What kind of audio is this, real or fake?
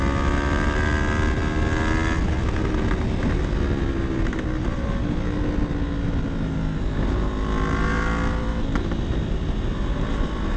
real